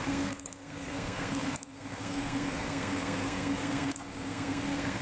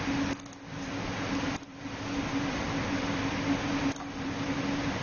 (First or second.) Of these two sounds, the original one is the second